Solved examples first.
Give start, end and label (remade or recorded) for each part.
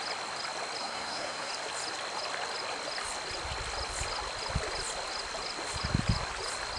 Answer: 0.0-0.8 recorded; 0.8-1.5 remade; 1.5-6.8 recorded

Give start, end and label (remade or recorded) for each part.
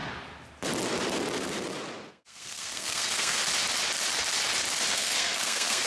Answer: 0.0-2.1 recorded; 2.1-3.4 remade; 3.4-4.9 recorded; 4.9-5.9 remade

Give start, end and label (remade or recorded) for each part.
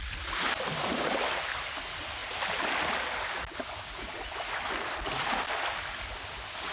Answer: 0.0-6.7 recorded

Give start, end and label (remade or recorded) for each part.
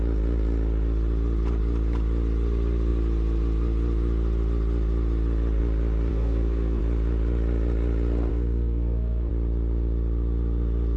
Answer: 0.0-6.1 recorded; 6.1-6.8 remade; 6.8-8.3 recorded; 8.3-9.3 remade; 9.3-11.0 recorded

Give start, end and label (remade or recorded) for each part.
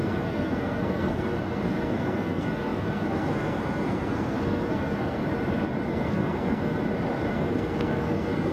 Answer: 0.0-5.2 remade; 5.2-5.9 recorded; 5.9-6.8 remade; 6.8-7.3 recorded; 7.3-8.5 remade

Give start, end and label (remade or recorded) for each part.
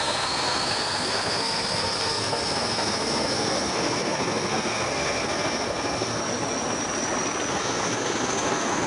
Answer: 0.0-6.2 remade; 6.2-7.5 recorded; 7.5-8.9 remade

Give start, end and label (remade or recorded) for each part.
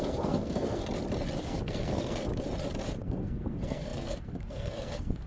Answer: 0.0-0.8 remade; 0.8-1.4 recorded; 1.4-2.3 remade; 2.3-3.0 recorded; 3.0-5.3 remade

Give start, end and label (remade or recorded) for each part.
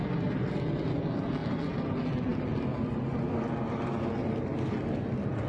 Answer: 0.0-5.5 recorded